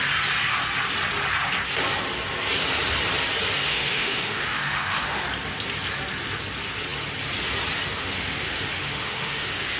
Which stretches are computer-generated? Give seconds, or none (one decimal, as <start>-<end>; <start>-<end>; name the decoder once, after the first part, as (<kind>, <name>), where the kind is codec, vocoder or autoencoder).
3.7-5.2 (autoencoder, DAC-VAE); 8.0-9.8